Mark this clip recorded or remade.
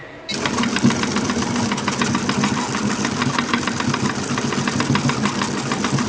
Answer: recorded